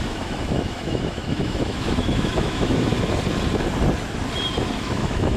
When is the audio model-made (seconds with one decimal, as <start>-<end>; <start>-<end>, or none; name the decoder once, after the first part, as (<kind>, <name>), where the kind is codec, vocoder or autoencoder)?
0.0-2.9 (autoencoder, DAC-VAE); 4.8-5.4